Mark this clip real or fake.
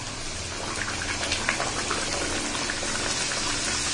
real